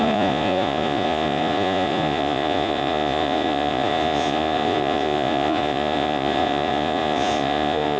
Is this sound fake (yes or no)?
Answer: yes